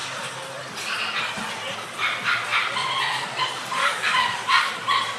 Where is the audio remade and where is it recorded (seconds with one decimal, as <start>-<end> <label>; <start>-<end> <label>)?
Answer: 0.0-3.8 recorded; 3.8-4.7 remade; 4.7-5.2 recorded